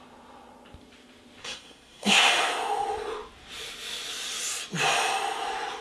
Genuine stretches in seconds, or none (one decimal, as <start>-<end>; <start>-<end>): 0.0-1.4; 2.3-5.8